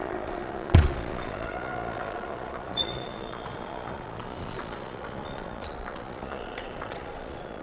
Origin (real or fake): fake